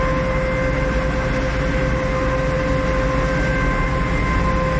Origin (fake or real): real